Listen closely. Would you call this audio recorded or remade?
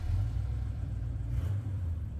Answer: remade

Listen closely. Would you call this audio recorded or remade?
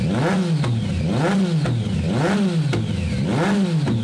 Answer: recorded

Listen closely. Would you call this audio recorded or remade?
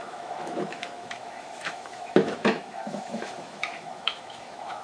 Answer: remade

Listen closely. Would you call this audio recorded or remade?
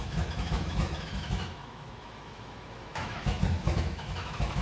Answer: remade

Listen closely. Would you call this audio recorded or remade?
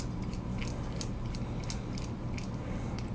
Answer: recorded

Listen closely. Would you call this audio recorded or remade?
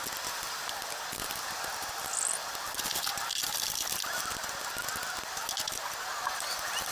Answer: recorded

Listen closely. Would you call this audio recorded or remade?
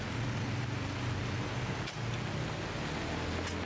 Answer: recorded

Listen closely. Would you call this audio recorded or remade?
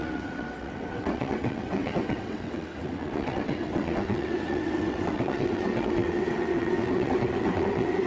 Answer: remade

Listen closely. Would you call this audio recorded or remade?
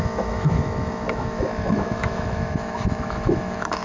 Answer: remade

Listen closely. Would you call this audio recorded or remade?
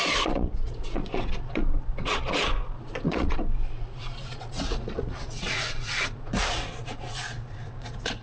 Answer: remade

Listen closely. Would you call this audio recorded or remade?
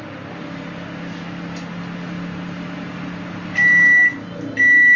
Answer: recorded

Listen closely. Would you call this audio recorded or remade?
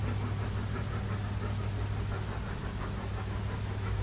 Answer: recorded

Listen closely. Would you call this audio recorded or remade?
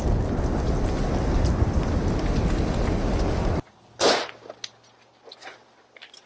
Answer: recorded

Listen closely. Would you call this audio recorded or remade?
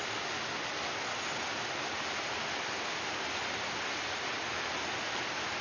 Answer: recorded